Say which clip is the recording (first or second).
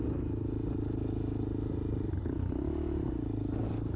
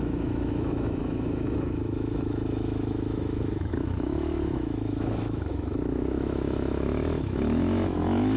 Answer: first